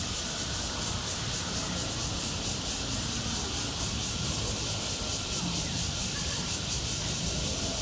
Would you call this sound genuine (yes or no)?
no